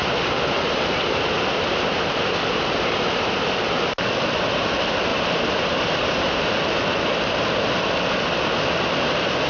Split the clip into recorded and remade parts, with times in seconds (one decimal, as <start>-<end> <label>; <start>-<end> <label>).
0.0-3.5 remade; 3.5-5.1 recorded; 5.1-6.2 remade; 6.2-9.5 recorded